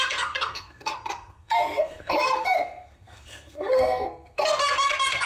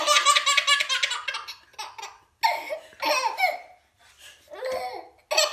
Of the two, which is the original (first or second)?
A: second